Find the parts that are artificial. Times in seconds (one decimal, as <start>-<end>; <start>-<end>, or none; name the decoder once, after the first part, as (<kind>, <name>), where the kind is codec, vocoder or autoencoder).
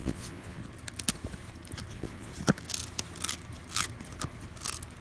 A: 0.0-0.6 (vocoder, Vocos); 1.9-2.3